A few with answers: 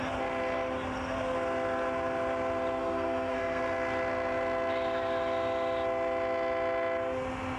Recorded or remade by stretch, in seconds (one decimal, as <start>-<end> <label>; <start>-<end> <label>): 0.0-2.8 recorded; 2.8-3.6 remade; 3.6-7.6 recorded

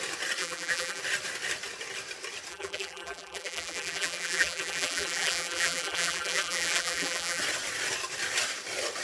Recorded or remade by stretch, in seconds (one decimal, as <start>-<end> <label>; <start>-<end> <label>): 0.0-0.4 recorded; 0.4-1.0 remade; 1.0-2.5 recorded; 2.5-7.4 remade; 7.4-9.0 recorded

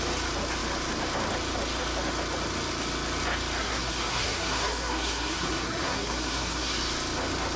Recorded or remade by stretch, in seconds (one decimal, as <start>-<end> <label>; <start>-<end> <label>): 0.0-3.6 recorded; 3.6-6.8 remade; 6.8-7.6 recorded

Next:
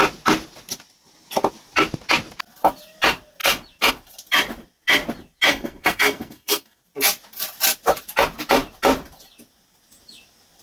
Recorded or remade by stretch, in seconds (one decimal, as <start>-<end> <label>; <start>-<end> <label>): 0.0-5.5 recorded; 5.5-6.8 remade; 6.8-10.6 recorded

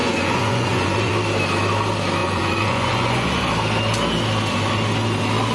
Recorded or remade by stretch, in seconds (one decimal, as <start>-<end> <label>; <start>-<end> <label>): 0.0-1.1 remade; 1.1-2.2 recorded; 2.2-3.5 remade; 3.5-5.5 recorded